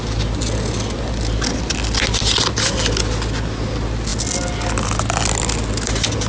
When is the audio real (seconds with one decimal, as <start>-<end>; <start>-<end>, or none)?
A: 0.0-6.3